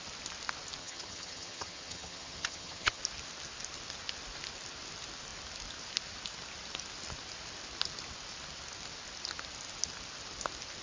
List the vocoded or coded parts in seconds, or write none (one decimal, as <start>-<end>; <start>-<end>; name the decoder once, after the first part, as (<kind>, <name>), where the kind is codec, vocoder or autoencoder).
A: 0.8-3.0 (vocoder, HiFi-GAN)